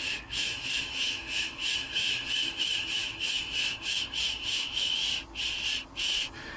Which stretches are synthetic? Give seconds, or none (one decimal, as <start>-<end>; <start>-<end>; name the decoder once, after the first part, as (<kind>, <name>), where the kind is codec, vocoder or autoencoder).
0.0-5.1 (autoencoder, DAC-VAE); 6.0-6.6